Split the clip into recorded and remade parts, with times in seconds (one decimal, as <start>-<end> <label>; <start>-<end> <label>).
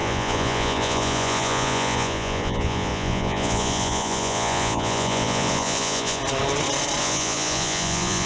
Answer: 0.0-6.2 remade; 6.2-7.0 recorded; 7.0-8.2 remade